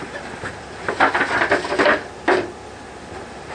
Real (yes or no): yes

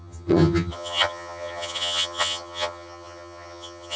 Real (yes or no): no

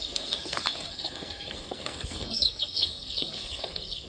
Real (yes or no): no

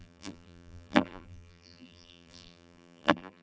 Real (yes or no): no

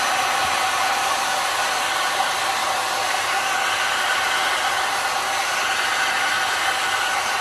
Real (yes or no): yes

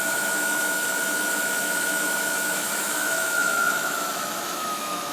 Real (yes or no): no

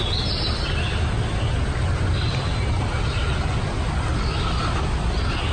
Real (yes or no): yes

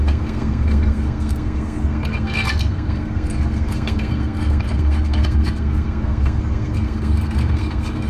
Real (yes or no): no